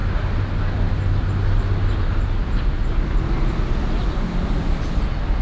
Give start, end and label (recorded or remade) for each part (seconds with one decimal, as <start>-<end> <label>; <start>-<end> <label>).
0.0-5.4 recorded